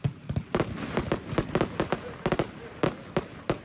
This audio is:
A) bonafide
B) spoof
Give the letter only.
A